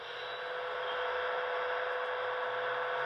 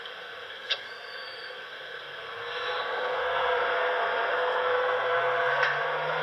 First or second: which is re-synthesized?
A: second